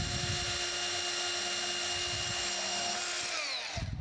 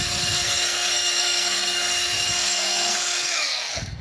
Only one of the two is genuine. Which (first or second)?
first